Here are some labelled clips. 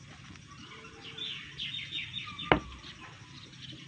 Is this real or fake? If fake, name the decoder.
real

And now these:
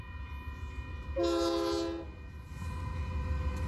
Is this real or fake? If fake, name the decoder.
real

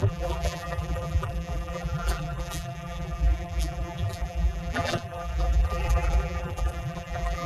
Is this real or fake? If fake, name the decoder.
fake, vocoder, BigVGAN v2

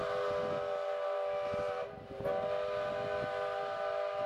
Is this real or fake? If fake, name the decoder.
real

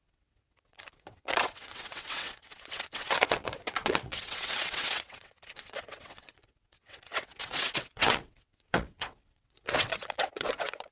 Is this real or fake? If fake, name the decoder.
fake, vocoder, WaveNeXt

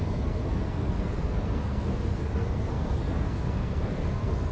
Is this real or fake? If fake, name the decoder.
fake, codec, SNAC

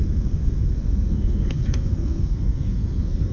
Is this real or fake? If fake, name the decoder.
fake, codec, SNAC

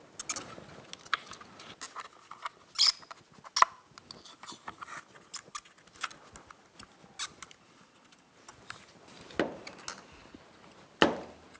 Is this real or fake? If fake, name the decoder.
real